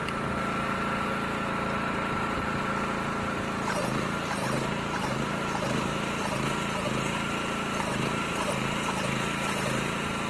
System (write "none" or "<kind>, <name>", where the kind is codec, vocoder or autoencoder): vocoder, BigVGAN v2